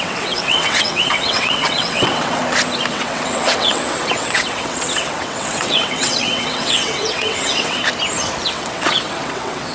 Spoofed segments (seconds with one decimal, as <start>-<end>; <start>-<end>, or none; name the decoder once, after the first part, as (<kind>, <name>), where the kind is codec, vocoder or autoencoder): 0.0-2.4 (vocoder, WaveNeXt); 2.9-7.8; 8.5-9.7